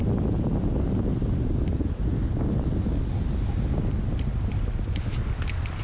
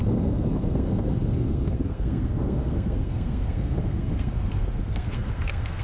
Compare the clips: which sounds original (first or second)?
first